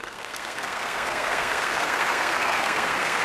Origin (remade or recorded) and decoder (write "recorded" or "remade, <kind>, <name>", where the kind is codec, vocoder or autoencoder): remade, codec, SNAC